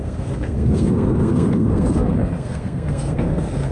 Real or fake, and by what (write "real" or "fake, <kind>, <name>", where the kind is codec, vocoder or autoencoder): fake, codec, SNAC